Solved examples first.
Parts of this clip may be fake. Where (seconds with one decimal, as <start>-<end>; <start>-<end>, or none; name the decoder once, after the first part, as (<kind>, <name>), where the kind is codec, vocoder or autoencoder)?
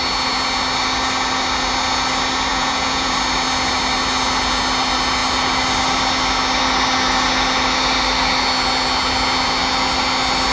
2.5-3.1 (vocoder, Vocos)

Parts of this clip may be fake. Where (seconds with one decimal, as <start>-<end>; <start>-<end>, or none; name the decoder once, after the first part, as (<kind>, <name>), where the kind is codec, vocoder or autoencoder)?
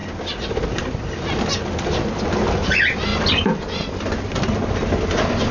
none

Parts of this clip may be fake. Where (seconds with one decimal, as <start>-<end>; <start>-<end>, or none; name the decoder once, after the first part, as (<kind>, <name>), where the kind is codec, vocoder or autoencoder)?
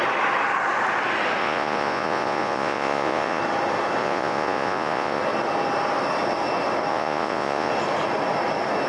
1.4-3.4 (vocoder, Vocos); 4.0-5.2; 6.9-7.7